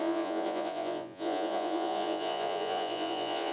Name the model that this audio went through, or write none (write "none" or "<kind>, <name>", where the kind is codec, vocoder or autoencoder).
vocoder, Vocos